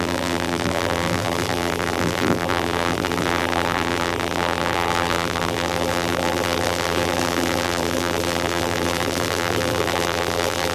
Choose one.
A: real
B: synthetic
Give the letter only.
B